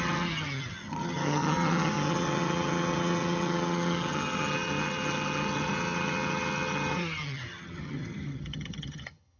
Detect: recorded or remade remade